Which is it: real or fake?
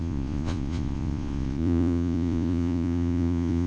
fake